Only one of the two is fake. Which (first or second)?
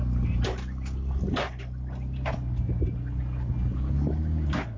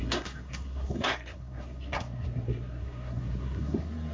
second